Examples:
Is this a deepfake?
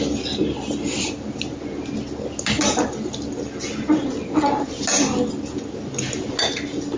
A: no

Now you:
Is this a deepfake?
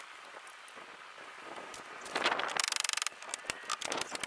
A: no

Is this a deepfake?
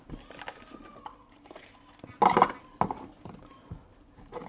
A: no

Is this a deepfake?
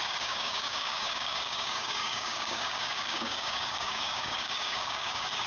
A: yes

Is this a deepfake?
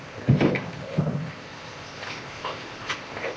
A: yes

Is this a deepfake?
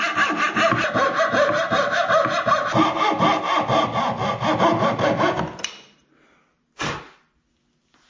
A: no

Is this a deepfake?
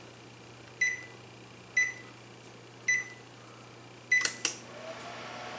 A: no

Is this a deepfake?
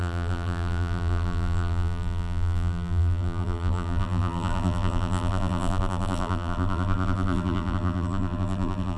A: yes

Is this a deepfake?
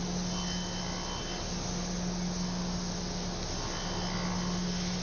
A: no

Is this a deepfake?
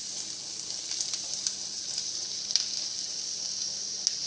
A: no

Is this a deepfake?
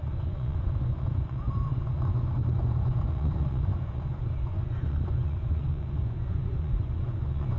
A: yes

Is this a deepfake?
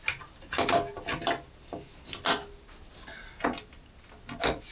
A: no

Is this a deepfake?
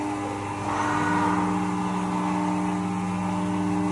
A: no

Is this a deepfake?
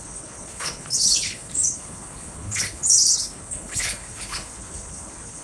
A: yes